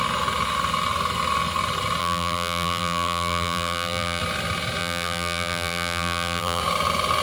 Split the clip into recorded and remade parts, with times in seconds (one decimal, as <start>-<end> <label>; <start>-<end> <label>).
0.0-2.0 recorded; 2.0-4.2 remade; 4.2-4.8 recorded; 4.8-6.6 remade; 6.6-7.2 recorded